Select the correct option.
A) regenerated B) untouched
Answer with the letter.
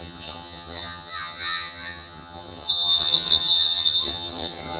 A